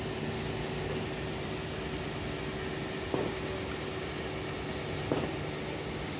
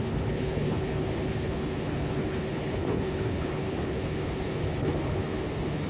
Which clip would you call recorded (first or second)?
first